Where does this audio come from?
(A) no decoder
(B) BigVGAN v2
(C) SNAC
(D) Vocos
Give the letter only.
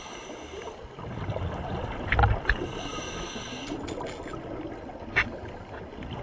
A